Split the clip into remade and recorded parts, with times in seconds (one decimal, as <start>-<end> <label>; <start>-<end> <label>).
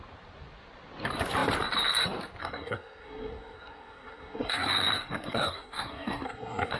0.0-2.4 recorded; 2.4-6.8 remade